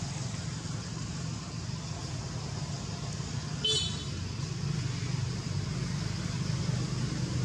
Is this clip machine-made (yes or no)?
no